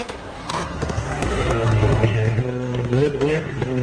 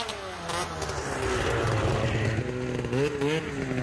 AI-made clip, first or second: first